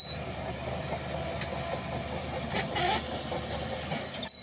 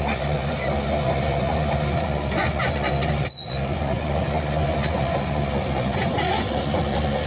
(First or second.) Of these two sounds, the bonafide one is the first